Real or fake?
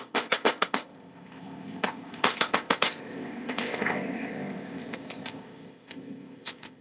fake